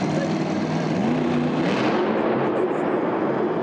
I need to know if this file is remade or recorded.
remade